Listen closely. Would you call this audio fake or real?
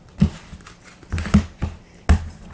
real